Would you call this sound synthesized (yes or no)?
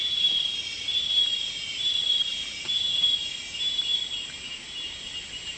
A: yes